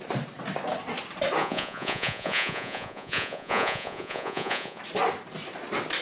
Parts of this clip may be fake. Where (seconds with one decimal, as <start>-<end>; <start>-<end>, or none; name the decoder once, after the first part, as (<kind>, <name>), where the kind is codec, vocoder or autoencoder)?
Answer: 1.4-4.8 (vocoder, Vocos)